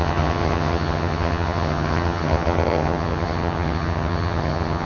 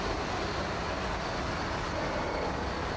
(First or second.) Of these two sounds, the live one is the second